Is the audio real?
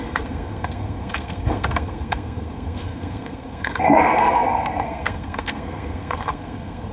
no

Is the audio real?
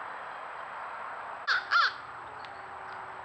yes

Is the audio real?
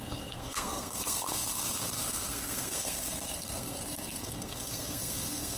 no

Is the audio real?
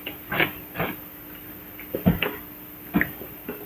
yes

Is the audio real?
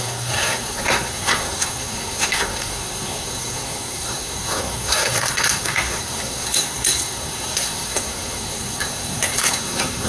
no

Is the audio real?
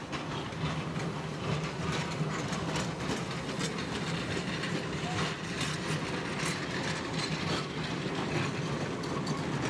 yes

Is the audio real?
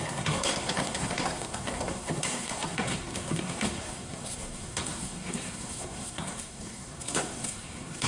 no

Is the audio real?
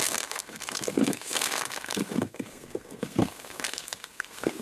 no